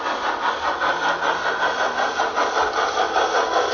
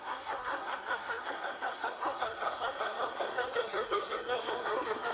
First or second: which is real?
first